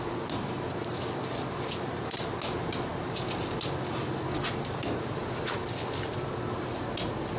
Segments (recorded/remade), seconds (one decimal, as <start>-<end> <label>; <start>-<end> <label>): 0.0-7.4 recorded